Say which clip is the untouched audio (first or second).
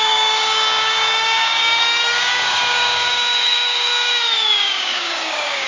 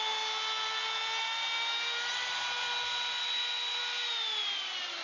second